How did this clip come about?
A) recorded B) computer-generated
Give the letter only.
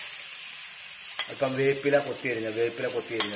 A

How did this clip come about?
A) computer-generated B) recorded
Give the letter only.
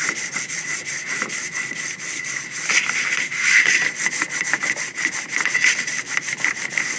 B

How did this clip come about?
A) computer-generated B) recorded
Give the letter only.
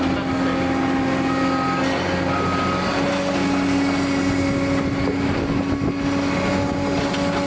B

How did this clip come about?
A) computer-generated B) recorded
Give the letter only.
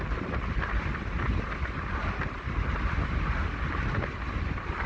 B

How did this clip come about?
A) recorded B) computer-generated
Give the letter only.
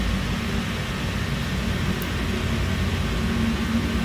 A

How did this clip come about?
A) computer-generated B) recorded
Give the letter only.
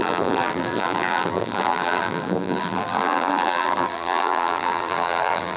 A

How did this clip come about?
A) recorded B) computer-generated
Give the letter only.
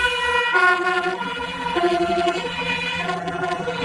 B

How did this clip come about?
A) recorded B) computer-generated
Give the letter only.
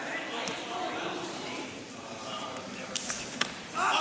B